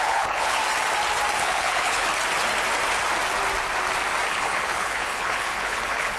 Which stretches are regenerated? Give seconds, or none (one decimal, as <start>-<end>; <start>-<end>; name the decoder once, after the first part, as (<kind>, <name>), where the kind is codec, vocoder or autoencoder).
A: 0.0-0.6 (codec, HILCodec); 1.4-2.1; 4.3-6.2